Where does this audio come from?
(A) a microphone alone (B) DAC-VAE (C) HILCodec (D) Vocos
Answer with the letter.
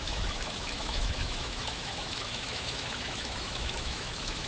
B